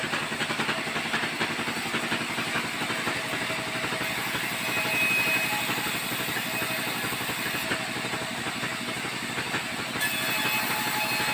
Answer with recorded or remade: recorded